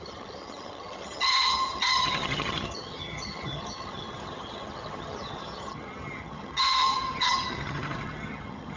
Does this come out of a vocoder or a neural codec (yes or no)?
yes